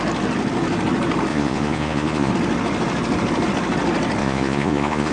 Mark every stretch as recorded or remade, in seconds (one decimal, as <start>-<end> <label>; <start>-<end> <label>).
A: 0.0-1.3 recorded; 1.3-2.3 remade; 2.3-4.2 recorded; 4.2-5.1 remade